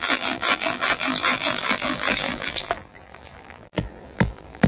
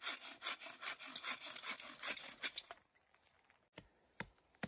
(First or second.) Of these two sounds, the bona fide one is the second